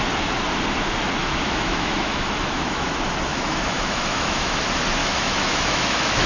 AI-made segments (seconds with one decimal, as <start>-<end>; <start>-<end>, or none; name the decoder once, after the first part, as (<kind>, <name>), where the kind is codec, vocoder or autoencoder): 1.2-2.9 (autoencoder, DAC-VAE); 3.3-4.6; 5.0-6.3